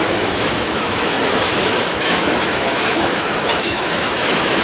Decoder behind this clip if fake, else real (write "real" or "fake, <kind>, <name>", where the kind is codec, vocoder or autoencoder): fake, autoencoder, DAC-VAE